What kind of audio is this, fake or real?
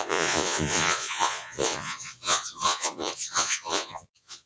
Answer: fake